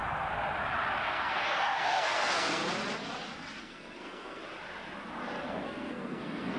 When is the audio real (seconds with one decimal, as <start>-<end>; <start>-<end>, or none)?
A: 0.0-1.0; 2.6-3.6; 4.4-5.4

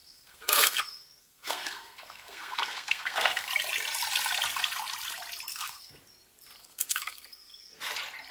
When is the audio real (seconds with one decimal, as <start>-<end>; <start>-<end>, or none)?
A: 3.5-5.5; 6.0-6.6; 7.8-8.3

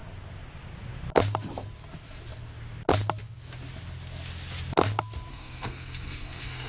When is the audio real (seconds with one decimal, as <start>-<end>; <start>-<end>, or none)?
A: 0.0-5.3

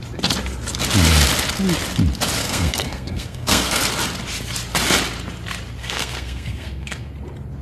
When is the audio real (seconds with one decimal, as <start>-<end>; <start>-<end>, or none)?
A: 0.0-2.4; 3.8-5.8; 7.1-7.6

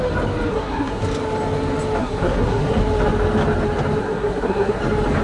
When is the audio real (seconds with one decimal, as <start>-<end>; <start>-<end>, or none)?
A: 0.0-0.5; 1.0-2.0; 2.8-4.0; 4.8-5.2